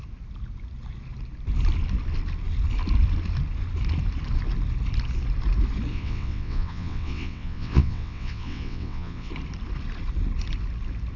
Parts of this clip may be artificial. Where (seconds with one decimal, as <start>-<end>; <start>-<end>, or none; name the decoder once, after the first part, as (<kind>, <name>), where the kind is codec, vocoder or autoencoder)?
5.9-9.3 (vocoder, WaveNeXt)